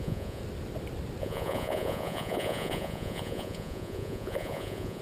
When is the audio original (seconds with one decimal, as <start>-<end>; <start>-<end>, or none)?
0.4-1.2